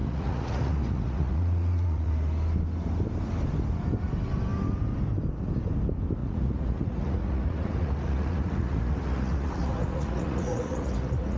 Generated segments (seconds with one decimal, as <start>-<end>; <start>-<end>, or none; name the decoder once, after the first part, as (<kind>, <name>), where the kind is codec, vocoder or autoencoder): 0.0-2.1 (vocoder, Vocos); 6.2-11.4